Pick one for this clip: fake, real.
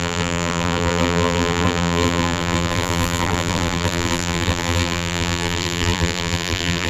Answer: fake